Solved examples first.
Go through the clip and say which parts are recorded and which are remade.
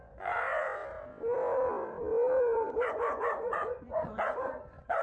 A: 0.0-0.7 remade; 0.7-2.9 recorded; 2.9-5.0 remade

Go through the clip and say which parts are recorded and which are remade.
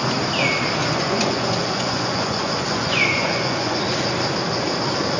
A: 0.0-0.8 recorded; 0.8-3.8 remade; 3.8-5.2 recorded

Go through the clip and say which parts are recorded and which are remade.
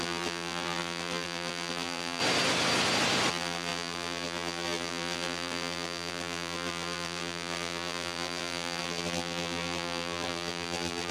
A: 0.0-2.2 remade; 2.2-3.3 recorded; 3.3-11.1 remade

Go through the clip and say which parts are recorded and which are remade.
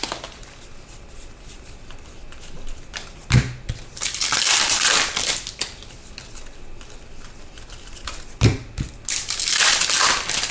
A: 0.0-10.5 recorded